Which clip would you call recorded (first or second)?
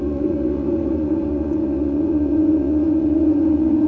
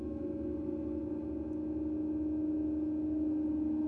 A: second